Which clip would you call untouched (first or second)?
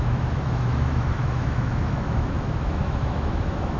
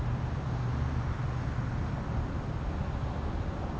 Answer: second